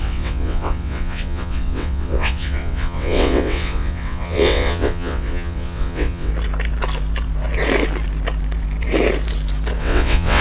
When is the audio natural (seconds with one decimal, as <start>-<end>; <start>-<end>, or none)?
6.3-9.8